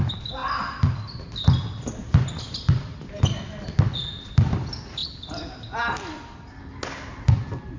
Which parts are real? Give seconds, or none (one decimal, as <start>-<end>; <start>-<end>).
0.0-7.8